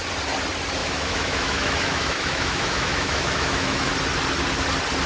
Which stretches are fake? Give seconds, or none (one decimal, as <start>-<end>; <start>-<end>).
0.8-3.9